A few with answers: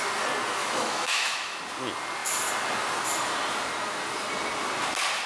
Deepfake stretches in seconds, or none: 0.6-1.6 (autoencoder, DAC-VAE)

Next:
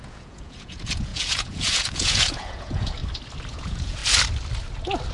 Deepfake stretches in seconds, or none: 0.0-3.0 (vocoder, Vocos); 3.5-4.0

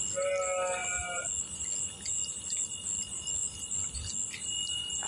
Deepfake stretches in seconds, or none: none